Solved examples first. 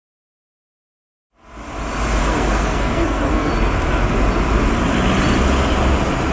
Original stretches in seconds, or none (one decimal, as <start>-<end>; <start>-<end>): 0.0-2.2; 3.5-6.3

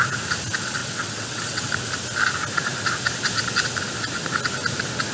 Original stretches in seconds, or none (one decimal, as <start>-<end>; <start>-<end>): 0.0-0.8; 1.7-5.1

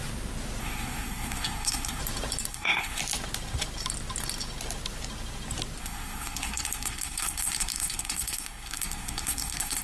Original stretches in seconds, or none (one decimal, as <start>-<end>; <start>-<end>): 0.0-0.6; 2.0-2.5; 3.0-5.8

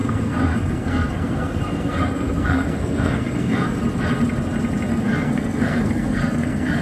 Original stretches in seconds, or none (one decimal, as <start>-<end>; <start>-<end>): 3.8-4.9

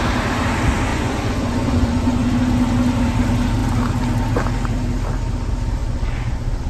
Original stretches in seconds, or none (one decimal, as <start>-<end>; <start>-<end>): 0.0-0.9; 2.3-5.8

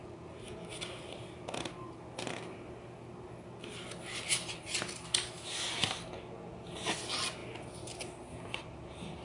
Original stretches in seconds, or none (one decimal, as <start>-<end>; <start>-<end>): 0.0-9.2